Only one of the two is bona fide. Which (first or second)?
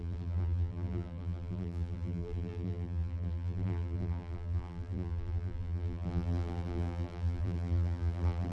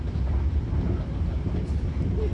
second